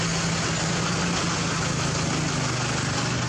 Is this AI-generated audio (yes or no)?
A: no